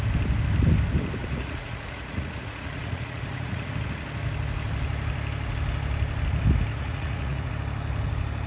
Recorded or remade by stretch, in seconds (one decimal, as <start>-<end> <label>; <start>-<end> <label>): 0.0-1.2 recorded; 1.2-3.7 remade; 3.7-6.7 recorded; 6.7-7.5 remade; 7.5-8.5 recorded